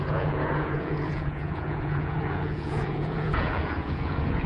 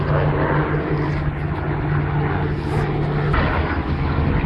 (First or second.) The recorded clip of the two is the second